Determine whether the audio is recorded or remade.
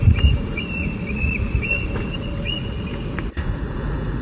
remade